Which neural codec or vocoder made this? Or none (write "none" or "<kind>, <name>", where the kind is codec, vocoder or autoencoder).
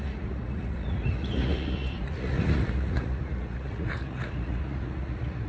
vocoder, Vocos